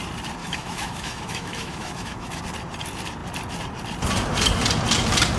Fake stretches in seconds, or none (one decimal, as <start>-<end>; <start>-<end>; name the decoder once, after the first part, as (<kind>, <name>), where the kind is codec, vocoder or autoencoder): 0.4-2.4 (autoencoder, DAC-VAE)

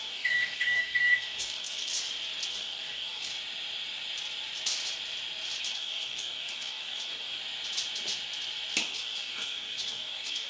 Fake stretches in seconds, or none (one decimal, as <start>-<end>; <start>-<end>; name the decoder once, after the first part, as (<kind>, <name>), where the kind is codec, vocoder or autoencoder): 0.0-1.9 (codec, DAC); 2.5-3.3; 5.6-7.4; 8.8-10.5

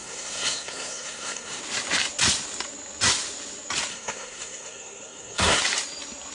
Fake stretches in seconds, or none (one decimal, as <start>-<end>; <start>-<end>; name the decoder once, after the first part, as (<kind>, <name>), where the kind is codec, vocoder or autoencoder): 0.0-1.6 (codec, SNAC); 3.9-5.6

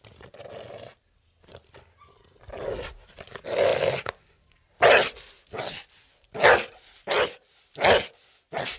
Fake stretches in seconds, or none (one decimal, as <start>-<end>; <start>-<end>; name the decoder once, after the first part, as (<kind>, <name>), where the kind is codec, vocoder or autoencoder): none

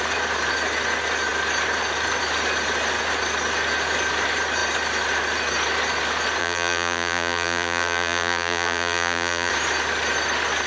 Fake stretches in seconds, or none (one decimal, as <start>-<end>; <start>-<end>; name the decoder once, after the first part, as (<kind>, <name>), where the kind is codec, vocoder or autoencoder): 6.4-9.5 (vocoder, BigVGAN v2)